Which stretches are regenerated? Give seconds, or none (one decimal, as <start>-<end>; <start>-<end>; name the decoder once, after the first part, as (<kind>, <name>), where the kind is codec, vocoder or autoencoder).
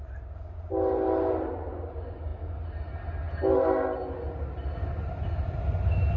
none